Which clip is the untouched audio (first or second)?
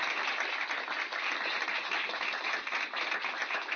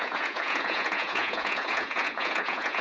first